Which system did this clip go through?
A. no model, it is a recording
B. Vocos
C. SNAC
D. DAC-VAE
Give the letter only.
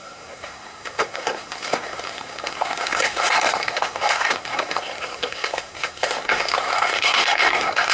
C